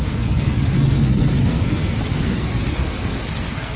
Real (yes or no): no